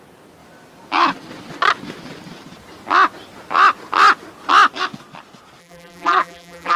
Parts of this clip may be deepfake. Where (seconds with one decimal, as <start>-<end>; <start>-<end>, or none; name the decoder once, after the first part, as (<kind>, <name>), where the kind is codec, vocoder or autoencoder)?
5.6-6.8 (vocoder, BigVGAN v2)